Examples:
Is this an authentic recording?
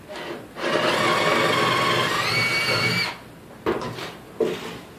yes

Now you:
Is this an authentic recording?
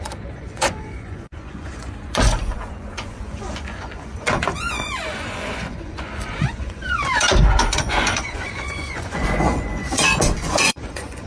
no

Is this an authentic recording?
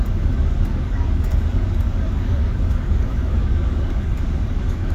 no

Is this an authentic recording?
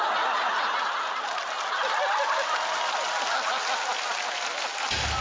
yes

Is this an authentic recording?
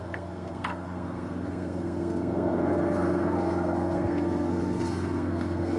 no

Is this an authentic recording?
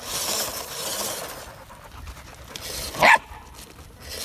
yes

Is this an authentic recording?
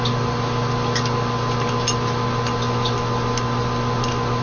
yes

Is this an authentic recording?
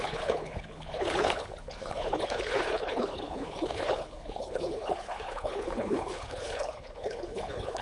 no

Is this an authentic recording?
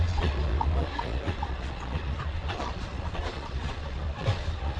no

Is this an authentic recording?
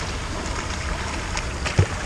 yes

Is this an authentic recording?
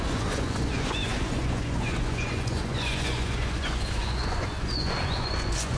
no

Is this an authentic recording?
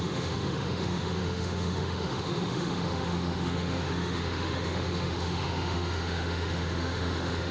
no